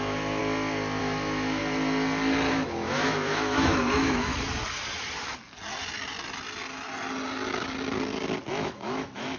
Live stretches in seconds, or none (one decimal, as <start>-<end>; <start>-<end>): 0.4-1.0; 1.6-2.5; 4.3-8.5